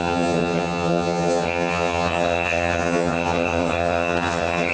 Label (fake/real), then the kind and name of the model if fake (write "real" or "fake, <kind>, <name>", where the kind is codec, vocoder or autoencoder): fake, vocoder, HiFi-GAN